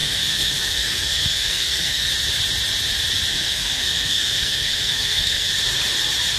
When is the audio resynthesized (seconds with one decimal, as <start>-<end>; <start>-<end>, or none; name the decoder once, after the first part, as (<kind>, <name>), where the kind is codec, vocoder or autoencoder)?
0.0-2.1 (codec, SNAC); 3.3-5.5

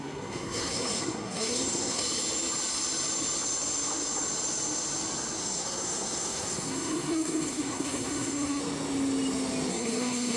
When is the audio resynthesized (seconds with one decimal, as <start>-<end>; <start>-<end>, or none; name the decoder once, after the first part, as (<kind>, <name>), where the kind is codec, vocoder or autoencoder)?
0.0-2.0 (codec, SNAC); 5.4-8.6; 9.7-10.4

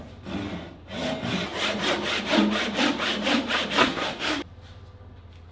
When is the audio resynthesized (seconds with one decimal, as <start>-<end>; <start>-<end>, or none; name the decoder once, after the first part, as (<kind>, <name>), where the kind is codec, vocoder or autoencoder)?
3.8-4.4 (codec, SNAC)

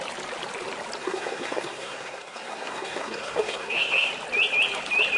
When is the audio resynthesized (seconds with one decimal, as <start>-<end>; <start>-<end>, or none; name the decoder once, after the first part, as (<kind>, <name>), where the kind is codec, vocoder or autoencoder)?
1.0-4.1 (codec, SNAC)

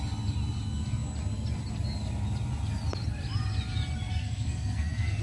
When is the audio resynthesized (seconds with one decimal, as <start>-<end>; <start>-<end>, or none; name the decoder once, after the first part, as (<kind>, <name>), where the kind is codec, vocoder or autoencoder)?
4.1-5.2 (codec, SNAC)

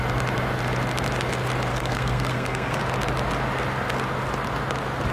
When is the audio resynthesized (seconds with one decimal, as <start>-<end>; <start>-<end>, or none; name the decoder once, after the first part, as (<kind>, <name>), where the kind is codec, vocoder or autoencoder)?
1.7-2.8 (codec, SNAC)